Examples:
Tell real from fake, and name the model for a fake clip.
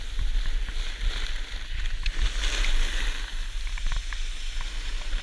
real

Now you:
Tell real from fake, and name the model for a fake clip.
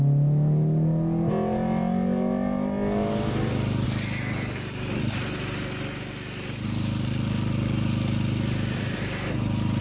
real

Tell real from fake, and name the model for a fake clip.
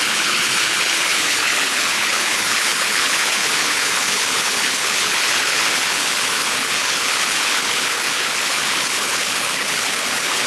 fake, codec, HILCodec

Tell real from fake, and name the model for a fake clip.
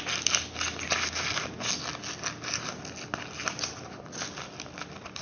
real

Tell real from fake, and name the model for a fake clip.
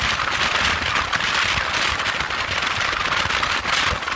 real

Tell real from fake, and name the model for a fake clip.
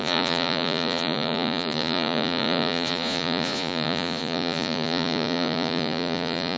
fake, vocoder, Vocos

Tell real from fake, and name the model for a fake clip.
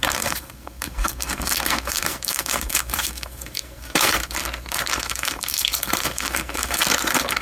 fake, codec, SNAC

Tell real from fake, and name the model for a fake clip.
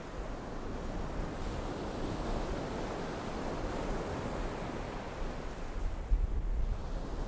real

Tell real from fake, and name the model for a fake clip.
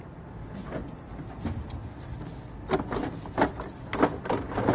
real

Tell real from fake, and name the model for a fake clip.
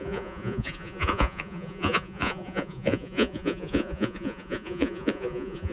fake, vocoder, Vocos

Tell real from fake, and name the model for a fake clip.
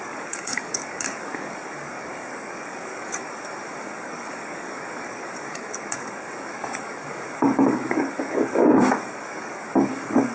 fake, codec, DAC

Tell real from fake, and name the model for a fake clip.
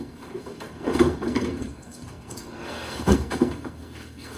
fake, codec, SNAC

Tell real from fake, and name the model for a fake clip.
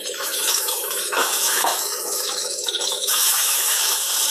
fake, autoencoder, DAC-VAE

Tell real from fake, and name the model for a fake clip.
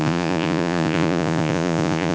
fake, vocoder, Vocos